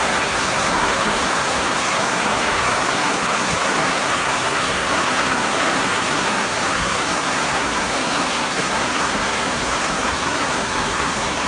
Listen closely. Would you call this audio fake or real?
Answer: fake